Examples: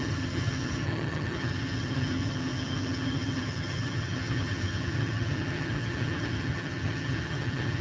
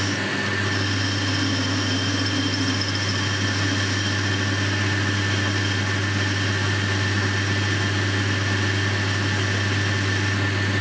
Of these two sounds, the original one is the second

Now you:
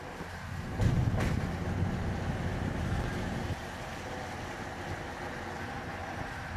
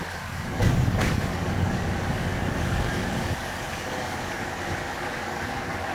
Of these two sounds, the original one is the first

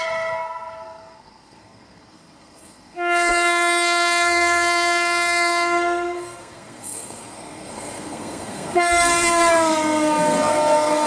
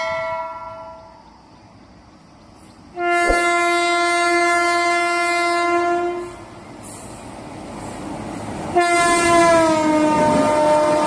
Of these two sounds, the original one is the second